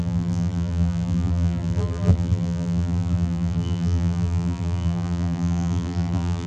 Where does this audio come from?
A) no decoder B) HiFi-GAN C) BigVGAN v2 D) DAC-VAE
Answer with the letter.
C